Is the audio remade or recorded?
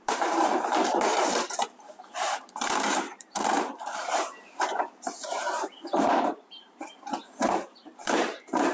remade